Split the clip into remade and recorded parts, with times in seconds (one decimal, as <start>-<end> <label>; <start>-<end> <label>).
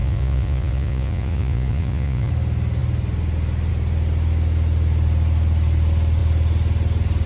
0.0-2.3 remade; 2.3-7.3 recorded